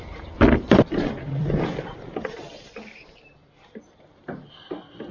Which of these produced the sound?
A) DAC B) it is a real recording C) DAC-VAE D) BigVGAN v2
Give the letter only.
D